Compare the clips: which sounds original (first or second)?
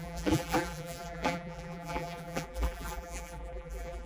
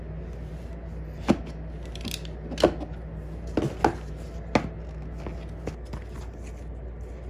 second